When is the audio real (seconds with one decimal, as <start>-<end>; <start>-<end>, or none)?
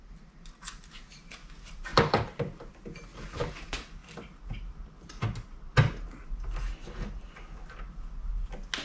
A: 0.0-1.9; 2.6-8.8